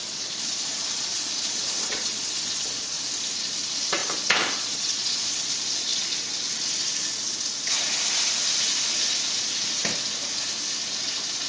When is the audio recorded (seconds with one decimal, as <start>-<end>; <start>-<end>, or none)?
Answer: 3.0-4.0; 5.4-11.5